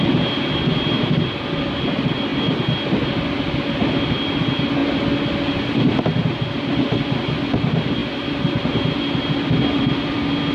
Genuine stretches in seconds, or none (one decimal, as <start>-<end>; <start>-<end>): 0.0-10.5